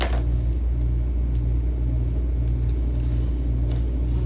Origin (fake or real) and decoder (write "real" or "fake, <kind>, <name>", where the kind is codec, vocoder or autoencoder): real